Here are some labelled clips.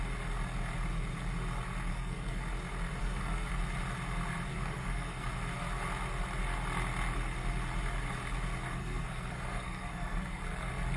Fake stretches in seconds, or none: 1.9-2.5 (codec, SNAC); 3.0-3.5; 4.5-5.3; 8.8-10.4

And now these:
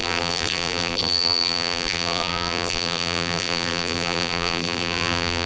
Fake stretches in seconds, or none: 0.0-5.5 (vocoder, BigVGAN v2)

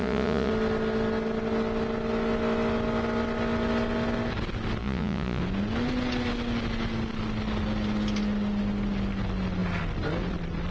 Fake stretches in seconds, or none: 0.0-0.5 (vocoder, Vocos); 4.8-5.4

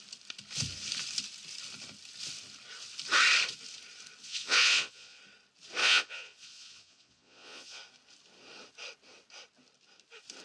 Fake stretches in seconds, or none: 4.2-5.2 (vocoder, Vocos); 5.8-7.8

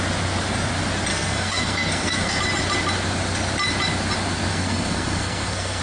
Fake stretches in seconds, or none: 1.1-2.4 (codec, SNAC); 4.5-5.8